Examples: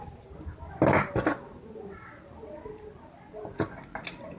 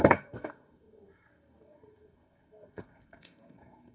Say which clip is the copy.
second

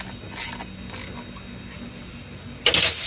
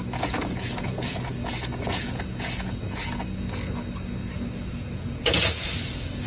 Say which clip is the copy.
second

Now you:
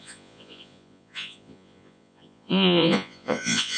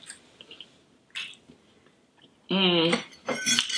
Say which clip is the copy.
first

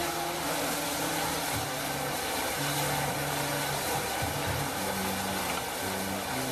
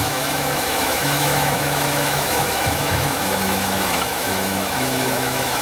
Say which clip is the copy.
second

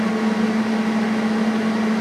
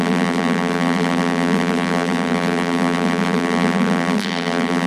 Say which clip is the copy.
second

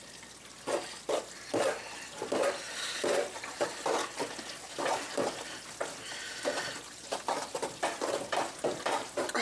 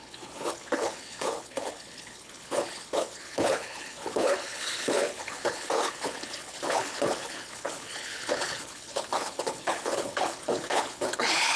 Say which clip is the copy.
second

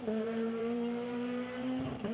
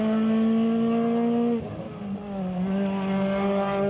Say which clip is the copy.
first